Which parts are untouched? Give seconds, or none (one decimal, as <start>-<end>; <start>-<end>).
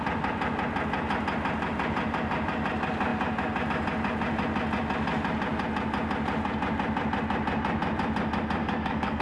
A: 0.0-8.6